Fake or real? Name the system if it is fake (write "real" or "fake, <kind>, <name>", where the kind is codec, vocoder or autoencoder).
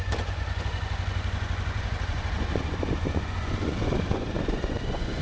fake, vocoder, Vocos